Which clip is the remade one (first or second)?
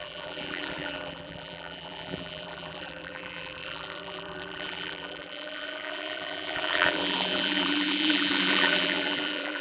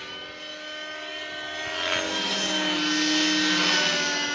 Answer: first